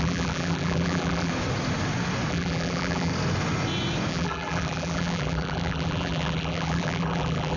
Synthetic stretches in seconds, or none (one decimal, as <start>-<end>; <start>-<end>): 0.0-1.3; 2.3-3.1; 4.1-7.6